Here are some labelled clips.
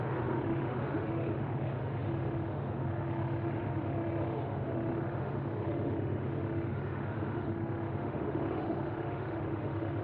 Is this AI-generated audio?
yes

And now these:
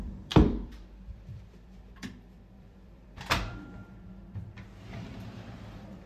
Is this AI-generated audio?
yes